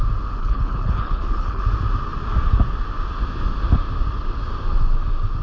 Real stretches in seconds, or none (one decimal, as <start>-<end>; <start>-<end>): 0.0-0.4; 1.6-5.4